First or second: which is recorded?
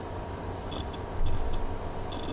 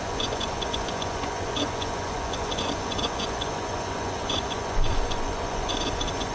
first